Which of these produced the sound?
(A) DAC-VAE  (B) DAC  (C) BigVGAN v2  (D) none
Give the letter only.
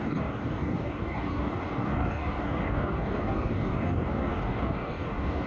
B